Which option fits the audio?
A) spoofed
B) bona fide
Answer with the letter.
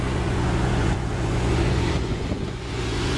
A